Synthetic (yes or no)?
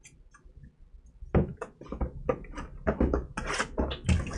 no